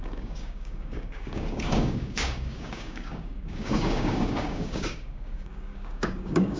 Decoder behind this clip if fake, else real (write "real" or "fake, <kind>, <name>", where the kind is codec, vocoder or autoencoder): fake, codec, DAC